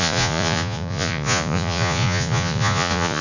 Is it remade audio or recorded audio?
remade